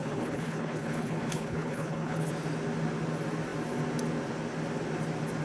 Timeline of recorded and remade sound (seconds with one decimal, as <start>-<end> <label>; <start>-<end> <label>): 0.0-2.3 remade; 2.3-5.4 recorded